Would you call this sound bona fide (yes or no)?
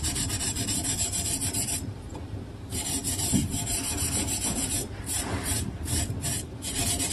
no